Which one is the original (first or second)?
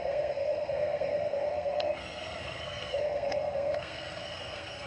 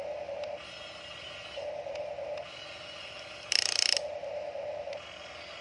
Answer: second